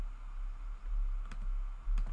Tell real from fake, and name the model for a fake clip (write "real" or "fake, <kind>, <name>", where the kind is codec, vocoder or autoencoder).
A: real